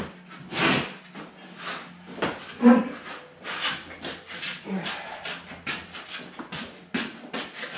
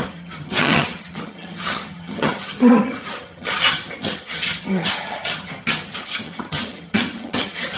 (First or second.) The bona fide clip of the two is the first